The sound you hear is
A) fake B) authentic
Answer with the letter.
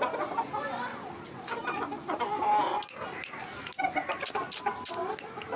B